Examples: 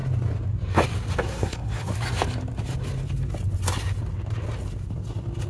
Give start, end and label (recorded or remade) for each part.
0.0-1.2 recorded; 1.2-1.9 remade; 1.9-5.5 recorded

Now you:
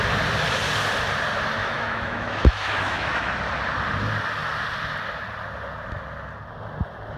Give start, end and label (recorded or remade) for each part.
0.0-1.6 recorded; 1.6-3.3 remade; 3.3-7.2 recorded

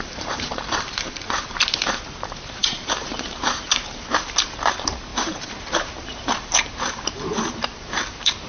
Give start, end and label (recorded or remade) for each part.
0.0-8.5 remade

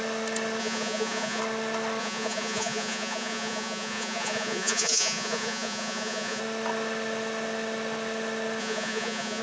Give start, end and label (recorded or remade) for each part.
0.0-0.6 recorded; 0.6-1.4 remade; 1.4-2.0 recorded; 2.0-6.4 remade; 6.4-8.6 recorded; 8.6-9.4 remade